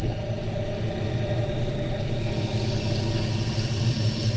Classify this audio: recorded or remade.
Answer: recorded